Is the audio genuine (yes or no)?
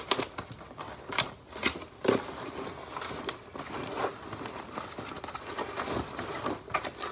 yes